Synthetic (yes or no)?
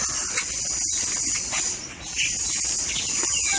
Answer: no